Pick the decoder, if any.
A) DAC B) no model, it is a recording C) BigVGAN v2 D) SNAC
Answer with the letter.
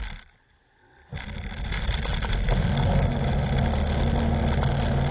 B